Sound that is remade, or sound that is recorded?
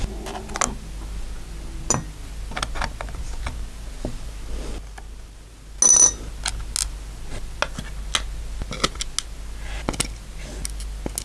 recorded